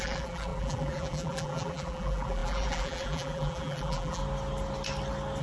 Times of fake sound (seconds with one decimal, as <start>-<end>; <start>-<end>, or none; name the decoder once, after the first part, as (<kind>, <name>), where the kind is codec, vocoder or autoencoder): 0.0-4.2 (vocoder, BigVGAN v2)